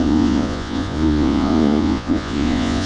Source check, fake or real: fake